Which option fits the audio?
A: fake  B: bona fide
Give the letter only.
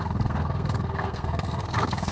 A